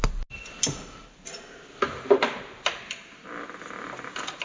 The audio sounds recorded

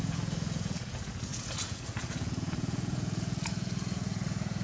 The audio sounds remade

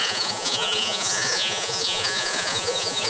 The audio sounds remade